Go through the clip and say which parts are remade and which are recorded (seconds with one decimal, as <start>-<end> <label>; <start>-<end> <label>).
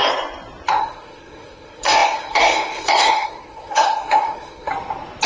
0.0-0.8 recorded; 0.8-4.7 remade; 4.7-5.3 recorded